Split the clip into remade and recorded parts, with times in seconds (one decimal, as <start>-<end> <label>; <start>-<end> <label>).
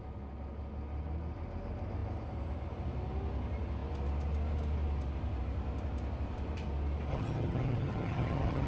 0.0-7.1 recorded; 7.1-8.7 remade